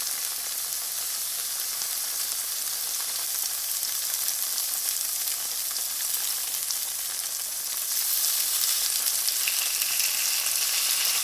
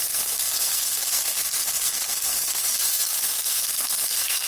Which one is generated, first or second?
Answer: second